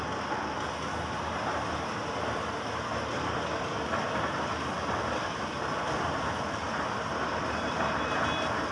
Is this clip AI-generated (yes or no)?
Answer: no